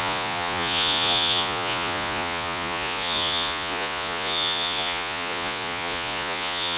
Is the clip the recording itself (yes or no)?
no